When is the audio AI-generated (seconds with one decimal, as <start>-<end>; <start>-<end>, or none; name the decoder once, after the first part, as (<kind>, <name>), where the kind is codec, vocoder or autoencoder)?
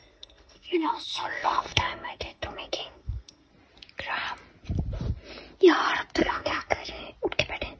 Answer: 0.0-3.5 (codec, SNAC); 6.2-7.0